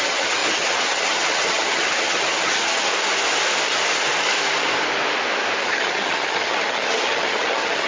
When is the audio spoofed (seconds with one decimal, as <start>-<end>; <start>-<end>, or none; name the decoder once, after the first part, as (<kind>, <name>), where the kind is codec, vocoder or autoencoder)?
0.0-2.9 (vocoder, HiFi-GAN); 5.6-7.9